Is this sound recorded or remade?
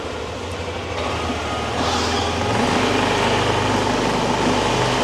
recorded